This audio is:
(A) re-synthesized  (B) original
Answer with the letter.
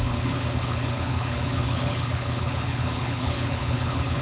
A